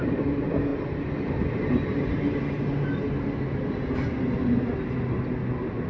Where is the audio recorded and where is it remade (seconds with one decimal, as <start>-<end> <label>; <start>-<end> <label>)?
0.0-5.9 recorded